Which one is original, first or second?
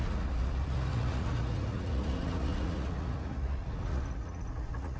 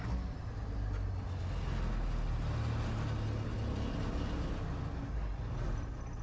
second